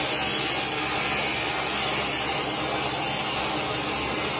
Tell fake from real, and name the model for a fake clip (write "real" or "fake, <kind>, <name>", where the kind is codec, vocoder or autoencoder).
real